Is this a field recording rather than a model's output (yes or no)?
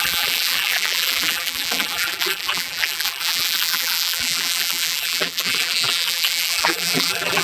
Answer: no